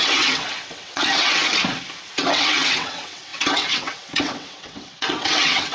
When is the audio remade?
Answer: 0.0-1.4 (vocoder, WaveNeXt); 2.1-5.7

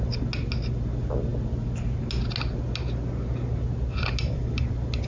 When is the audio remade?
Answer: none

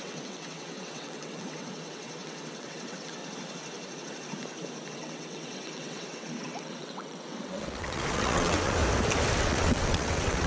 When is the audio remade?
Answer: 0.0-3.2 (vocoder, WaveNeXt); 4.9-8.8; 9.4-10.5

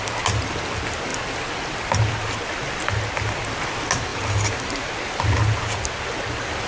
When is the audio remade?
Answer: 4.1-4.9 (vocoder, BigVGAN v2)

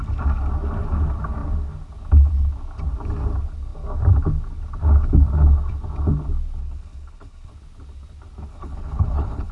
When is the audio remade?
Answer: 6.6-7.5 (codec, HILCodec); 8.5-9.5

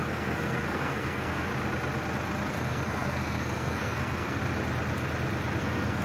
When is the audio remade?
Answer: 0.0-1.5 (codec, SNAC); 2.5-4.4; 5.6-6.0

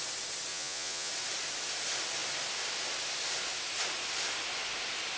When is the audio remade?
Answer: 0.5-1.1 (vocoder, Vocos)

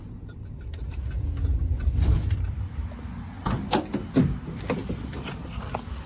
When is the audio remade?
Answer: 1.5-3.4 (vocoder, BigVGAN v2); 4.8-6.1